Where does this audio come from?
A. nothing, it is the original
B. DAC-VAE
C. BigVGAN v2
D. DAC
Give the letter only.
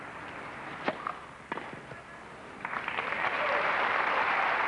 C